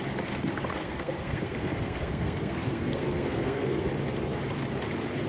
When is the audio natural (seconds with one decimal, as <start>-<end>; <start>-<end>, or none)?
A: 0.0-0.7; 3.9-5.3